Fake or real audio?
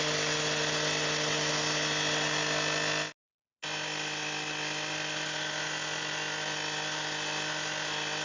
real